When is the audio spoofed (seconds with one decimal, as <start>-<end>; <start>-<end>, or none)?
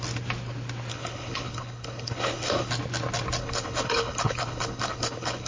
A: 0.9-2.7; 3.4-5.5